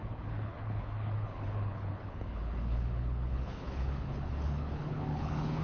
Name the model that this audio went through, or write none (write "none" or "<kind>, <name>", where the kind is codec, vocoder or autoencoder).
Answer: codec, HILCodec